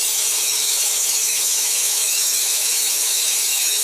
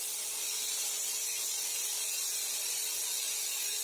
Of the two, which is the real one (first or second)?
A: second